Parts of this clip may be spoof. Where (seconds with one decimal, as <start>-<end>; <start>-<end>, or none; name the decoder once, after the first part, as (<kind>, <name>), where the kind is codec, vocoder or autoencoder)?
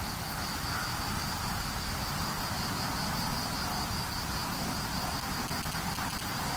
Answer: none